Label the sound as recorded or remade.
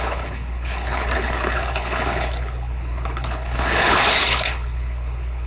remade